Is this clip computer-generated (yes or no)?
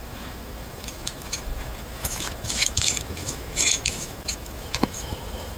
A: yes